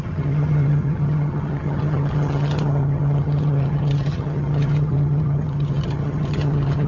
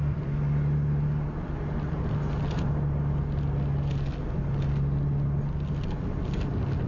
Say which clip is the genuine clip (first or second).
second